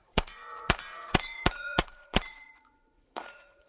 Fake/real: fake